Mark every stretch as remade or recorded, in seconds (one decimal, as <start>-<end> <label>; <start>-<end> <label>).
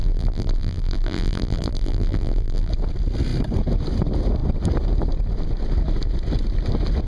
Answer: 0.0-2.7 remade; 2.7-7.1 recorded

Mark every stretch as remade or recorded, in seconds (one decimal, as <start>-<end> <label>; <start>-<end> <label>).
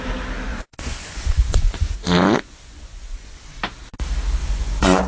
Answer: 0.0-0.5 recorded; 0.5-3.6 remade; 3.6-4.4 recorded; 4.4-5.1 remade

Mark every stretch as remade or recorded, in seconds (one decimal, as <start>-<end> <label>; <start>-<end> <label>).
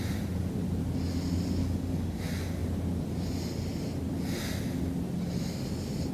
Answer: 0.0-1.6 recorded; 1.6-2.2 remade; 2.2-6.1 recorded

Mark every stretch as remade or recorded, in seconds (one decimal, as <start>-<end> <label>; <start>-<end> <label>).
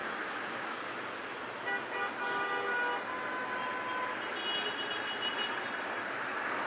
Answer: 0.0-6.7 recorded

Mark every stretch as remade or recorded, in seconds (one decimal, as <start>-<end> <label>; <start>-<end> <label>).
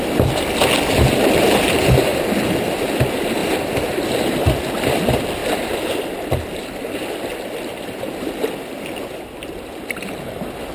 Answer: 0.0-10.7 recorded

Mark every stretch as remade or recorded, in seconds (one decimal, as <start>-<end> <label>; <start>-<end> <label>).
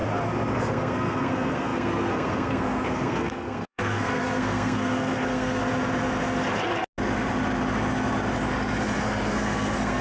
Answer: 0.0-0.5 recorded; 0.5-5.6 remade; 5.6-9.0 recorded; 9.0-10.0 remade